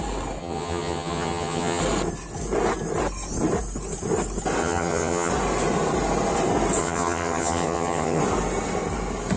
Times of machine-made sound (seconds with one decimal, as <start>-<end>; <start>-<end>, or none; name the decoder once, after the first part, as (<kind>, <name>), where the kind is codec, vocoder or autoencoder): 0.4-1.8 (vocoder, HiFi-GAN); 4.6-5.3; 6.8-8.2